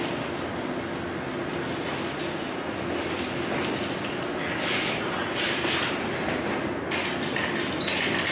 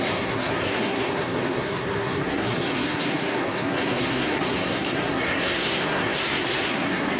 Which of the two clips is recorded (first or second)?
first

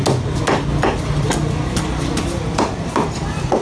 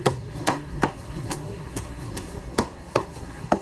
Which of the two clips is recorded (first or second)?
first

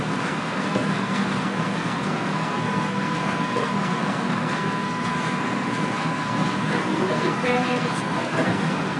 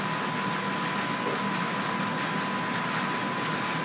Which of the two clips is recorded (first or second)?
second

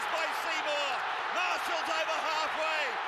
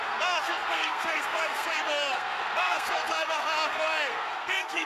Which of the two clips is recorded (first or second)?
first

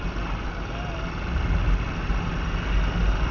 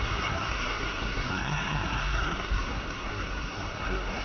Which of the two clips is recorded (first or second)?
first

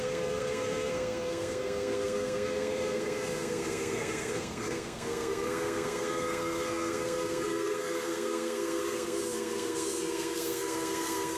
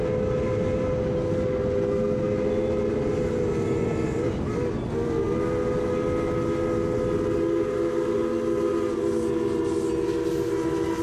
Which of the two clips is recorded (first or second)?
second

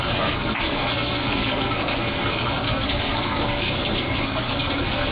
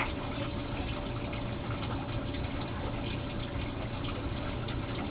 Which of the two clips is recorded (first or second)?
second